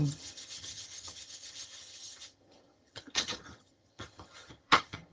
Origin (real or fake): fake